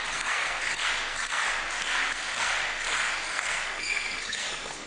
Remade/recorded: remade